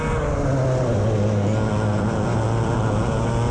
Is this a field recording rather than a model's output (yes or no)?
yes